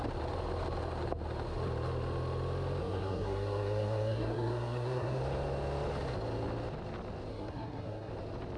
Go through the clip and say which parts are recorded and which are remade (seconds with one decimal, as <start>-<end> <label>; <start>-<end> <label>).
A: 0.0-2.8 recorded; 2.8-5.2 remade; 5.2-7.3 recorded; 7.3-8.1 remade; 8.1-8.6 recorded